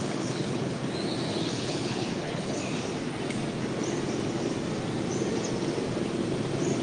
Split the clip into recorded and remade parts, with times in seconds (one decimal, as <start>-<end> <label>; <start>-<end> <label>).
0.0-0.8 remade; 0.8-1.5 recorded; 1.5-2.6 remade; 2.6-6.8 recorded